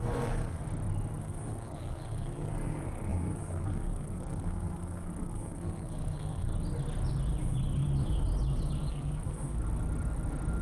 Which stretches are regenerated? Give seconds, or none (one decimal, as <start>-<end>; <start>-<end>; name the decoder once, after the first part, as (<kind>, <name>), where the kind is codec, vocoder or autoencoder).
0.0-0.6 (codec, SNAC); 1.2-6.5; 8.9-9.6